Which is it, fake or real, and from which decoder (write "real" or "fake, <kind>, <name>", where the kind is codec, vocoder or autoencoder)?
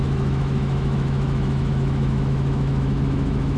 fake, autoencoder, DAC-VAE